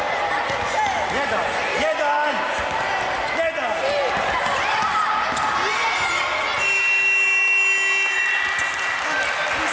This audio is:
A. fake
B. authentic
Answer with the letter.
B